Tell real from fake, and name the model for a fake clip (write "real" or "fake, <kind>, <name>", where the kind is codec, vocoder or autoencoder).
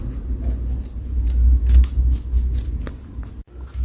real